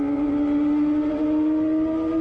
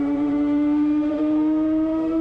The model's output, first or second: second